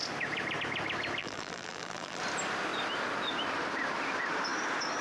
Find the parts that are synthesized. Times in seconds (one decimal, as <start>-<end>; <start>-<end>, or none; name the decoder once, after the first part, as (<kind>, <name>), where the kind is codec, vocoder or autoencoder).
1.2-2.2 (vocoder, BigVGAN v2)